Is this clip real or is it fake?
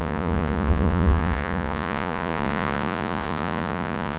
fake